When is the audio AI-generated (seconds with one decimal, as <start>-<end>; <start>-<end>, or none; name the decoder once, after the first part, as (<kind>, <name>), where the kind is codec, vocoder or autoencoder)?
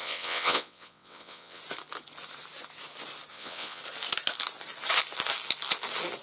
0.0-1.6 (vocoder, WaveNeXt); 3.3-3.8